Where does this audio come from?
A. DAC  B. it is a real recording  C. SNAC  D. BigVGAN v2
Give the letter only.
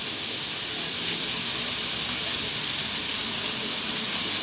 B